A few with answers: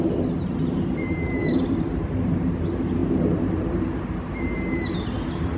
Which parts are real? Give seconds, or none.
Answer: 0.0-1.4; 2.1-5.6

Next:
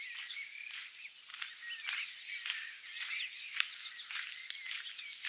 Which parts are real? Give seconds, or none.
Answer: 1.3-3.1

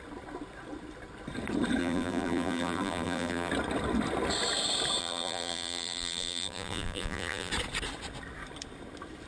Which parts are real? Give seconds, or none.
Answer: 0.0-1.8; 3.5-5.0; 7.5-9.3

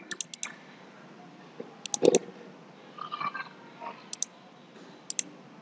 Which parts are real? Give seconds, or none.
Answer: 0.0-5.6

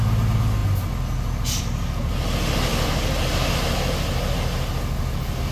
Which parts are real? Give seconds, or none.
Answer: 0.0-2.7; 3.5-5.5

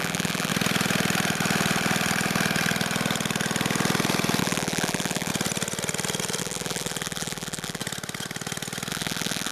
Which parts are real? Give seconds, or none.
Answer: 0.5-4.4; 5.3-6.4; 7.8-8.9

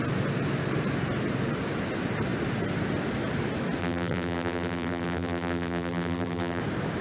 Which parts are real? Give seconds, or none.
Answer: 0.0-3.8; 6.6-7.0